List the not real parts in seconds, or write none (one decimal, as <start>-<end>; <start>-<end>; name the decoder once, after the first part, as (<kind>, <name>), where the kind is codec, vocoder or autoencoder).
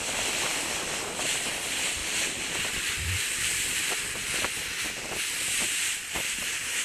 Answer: 0.5-1.3 (vocoder, BigVGAN v2); 2.0-4.0